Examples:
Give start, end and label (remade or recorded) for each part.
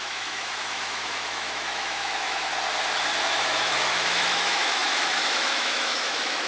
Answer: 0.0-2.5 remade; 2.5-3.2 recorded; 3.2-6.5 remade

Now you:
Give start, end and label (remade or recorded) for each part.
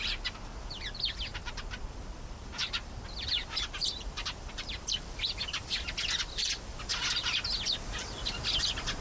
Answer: 0.0-6.9 remade; 6.9-9.0 recorded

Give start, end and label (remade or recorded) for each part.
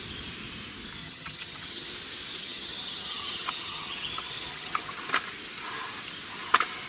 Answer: 0.0-1.0 recorded; 1.0-1.9 remade; 1.9-2.4 recorded; 2.4-5.0 remade; 5.0-6.9 recorded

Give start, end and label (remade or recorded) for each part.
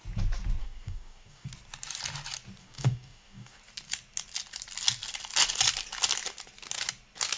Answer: 0.0-0.6 recorded; 0.6-1.5 remade; 1.5-2.6 recorded; 2.6-3.6 remade; 3.6-7.4 recorded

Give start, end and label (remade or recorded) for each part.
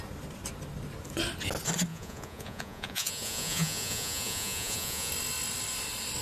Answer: 0.0-1.9 recorded; 1.9-5.1 remade; 5.1-6.2 recorded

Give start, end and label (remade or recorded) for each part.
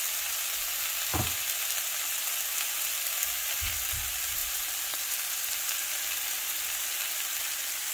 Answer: 0.0-7.9 recorded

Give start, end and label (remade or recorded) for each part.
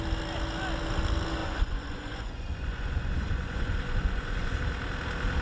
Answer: 0.0-1.4 recorded; 1.4-4.6 remade; 4.6-5.4 recorded